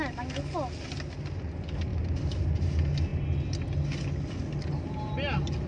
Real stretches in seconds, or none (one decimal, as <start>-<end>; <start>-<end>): 0.0-5.7